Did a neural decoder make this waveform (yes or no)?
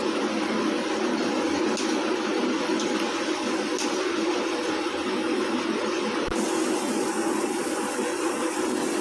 no